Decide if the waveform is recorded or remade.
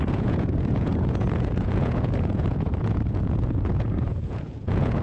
remade